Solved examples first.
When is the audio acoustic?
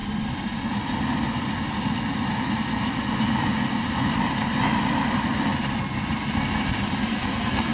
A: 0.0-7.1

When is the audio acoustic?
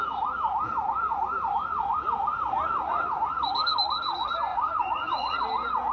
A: 0.0-1.7; 3.4-4.5; 5.4-5.9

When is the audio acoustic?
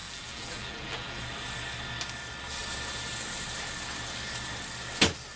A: 1.2-5.4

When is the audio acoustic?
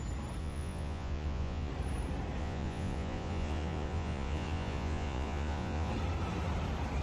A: 0.0-0.4; 1.7-2.4; 5.9-7.0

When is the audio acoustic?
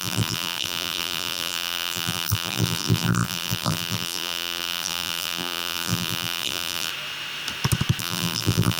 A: 6.9-8.0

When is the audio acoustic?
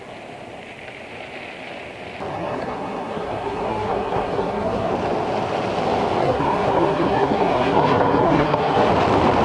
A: 0.0-2.3; 4.9-6.2; 8.9-9.4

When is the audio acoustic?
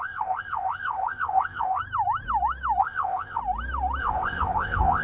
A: 1.8-2.8; 3.4-4.0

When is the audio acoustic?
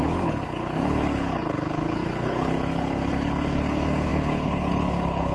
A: none